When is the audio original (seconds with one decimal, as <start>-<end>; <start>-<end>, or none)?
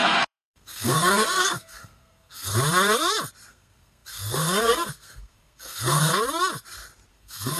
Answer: 2.5-3.5; 6.1-7.1